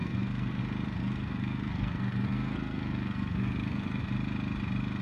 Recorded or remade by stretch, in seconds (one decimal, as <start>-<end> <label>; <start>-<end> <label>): 0.0-0.6 remade; 0.6-1.0 recorded; 1.0-4.0 remade; 4.0-5.0 recorded